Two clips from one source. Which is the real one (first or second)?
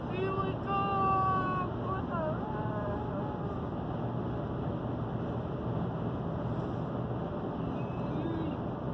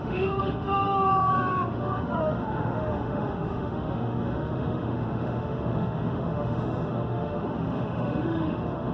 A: first